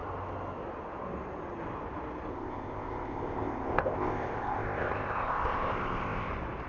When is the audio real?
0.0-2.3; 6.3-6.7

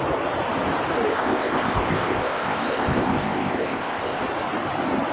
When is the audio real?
0.0-1.1; 4.2-5.1

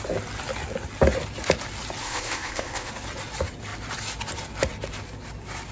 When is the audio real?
0.0-2.0; 2.9-5.7

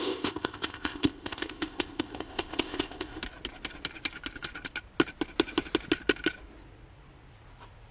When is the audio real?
3.2-7.9

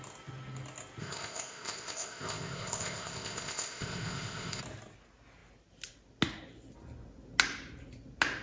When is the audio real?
0.0-1.0; 4.6-8.4

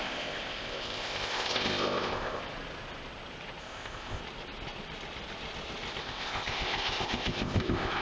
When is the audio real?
2.4-3.6; 4.2-6.0